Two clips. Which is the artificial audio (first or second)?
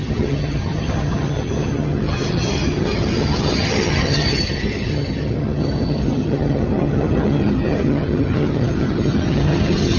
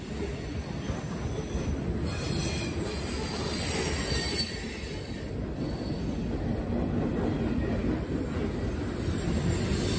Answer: first